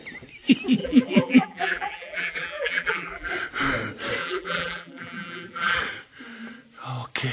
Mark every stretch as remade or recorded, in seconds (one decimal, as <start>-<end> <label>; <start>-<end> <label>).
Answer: 0.0-0.8 recorded; 0.8-3.3 remade; 3.3-4.2 recorded; 4.2-5.8 remade; 5.8-7.3 recorded